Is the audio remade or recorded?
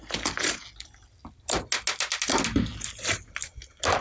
recorded